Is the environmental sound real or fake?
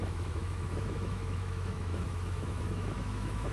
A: fake